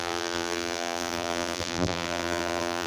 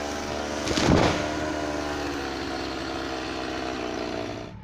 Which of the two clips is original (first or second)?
second